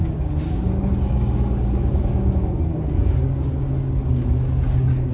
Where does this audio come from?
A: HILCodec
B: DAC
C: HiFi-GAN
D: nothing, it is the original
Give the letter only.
B